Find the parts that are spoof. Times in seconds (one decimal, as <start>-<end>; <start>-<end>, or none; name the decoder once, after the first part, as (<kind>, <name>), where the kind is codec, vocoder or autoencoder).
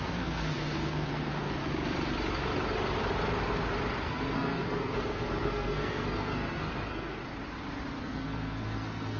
0.0-1.6 (codec, SNAC); 4.0-7.2; 8.0-9.2